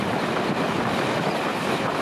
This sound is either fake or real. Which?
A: real